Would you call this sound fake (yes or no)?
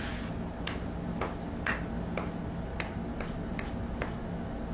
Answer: no